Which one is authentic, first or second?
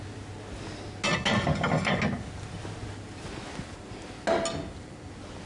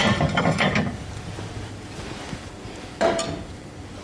first